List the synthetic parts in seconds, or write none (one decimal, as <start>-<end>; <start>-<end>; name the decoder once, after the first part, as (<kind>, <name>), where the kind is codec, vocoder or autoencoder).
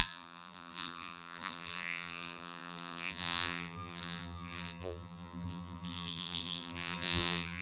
0.0-7.6 (vocoder, BigVGAN v2)